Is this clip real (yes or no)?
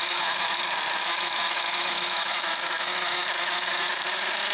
no